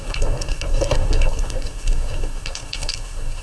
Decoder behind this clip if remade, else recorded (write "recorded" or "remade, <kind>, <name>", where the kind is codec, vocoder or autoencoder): remade, codec, SNAC